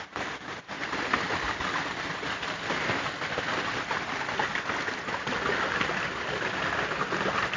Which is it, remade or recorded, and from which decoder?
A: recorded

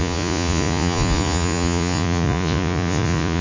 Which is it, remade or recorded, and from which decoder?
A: remade, vocoder, Vocos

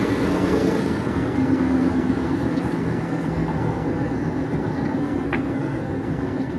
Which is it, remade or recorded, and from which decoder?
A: remade, codec, SNAC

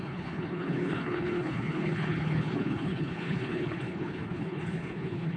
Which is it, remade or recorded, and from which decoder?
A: remade, codec, HILCodec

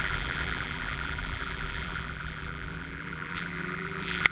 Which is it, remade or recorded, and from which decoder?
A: remade, vocoder, BigVGAN v2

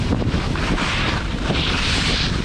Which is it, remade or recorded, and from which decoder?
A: recorded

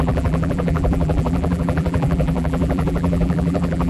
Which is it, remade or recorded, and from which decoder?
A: remade, vocoder, BigVGAN v2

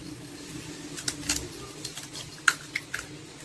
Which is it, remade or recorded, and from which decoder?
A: recorded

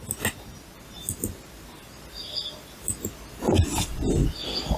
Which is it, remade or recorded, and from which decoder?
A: recorded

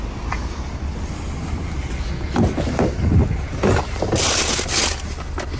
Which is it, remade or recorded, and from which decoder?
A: recorded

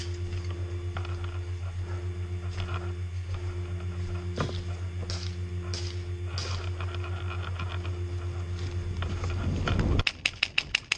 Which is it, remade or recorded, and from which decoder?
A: recorded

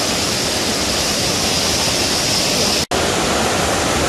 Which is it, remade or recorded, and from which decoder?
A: recorded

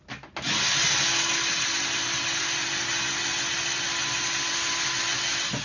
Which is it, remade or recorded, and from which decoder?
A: recorded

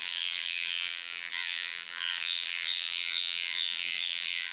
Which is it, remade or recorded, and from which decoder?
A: remade, vocoder, BigVGAN v2